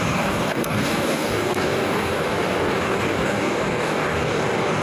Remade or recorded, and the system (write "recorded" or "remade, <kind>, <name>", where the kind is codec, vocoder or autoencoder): remade, codec, DAC